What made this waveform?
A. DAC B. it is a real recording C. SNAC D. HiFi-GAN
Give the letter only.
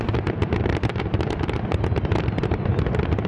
B